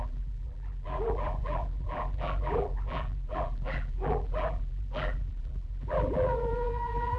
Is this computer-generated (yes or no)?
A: yes